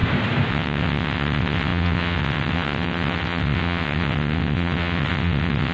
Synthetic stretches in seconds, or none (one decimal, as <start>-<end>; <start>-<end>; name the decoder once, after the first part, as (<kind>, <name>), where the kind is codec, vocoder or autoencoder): 0.5-5.7 (vocoder, WaveNeXt)